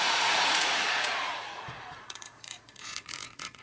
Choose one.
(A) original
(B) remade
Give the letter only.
B